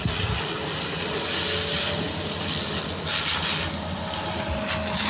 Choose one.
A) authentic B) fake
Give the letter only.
A